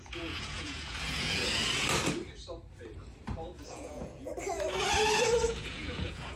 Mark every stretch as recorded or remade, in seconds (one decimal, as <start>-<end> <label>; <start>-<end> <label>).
0.0-1.4 remade; 1.4-3.7 recorded; 3.7-4.3 remade; 4.3-5.5 recorded; 5.5-6.4 remade

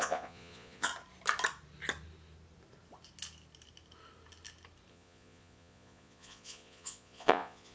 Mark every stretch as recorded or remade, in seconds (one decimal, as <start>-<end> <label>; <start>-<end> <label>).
0.0-0.9 remade; 0.9-4.9 recorded; 4.9-7.7 remade

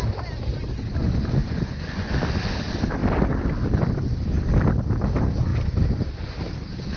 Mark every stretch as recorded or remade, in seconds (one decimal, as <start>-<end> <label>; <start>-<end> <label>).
0.0-1.4 recorded; 1.4-2.1 remade; 2.1-7.0 recorded

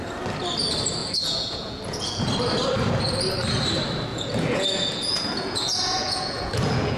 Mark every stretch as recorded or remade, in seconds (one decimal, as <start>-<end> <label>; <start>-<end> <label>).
0.0-1.0 recorded; 1.0-2.2 remade; 2.2-4.1 recorded; 4.1-7.0 remade

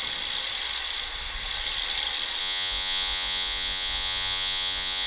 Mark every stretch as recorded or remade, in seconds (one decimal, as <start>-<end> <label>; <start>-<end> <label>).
0.0-2.4 recorded; 2.4-5.1 remade

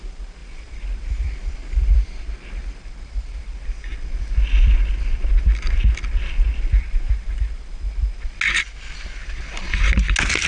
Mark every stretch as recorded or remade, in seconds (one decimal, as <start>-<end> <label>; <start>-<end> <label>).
0.0-10.5 recorded